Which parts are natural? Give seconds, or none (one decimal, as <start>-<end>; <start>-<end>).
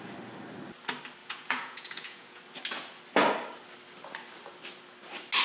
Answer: 0.0-1.2; 2.4-5.4